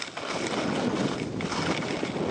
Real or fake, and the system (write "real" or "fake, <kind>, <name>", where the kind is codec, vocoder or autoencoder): real